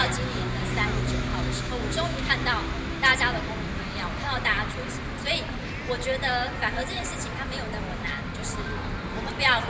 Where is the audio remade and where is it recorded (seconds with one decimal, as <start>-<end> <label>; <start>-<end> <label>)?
0.0-1.3 recorded; 1.3-2.3 remade; 2.3-9.7 recorded